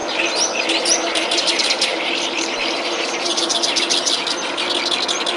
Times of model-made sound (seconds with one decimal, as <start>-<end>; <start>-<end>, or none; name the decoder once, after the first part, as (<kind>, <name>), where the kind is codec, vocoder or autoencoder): 0.0-3.2 (vocoder, BigVGAN v2)